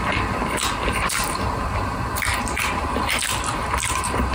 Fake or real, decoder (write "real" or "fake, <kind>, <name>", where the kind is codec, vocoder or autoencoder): fake, vocoder, BigVGAN v2